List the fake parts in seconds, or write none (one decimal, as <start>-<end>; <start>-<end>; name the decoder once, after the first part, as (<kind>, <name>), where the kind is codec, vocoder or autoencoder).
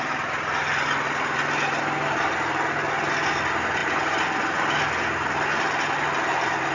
none